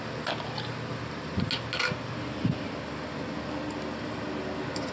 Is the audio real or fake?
real